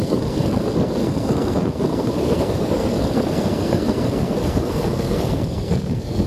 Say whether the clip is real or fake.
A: fake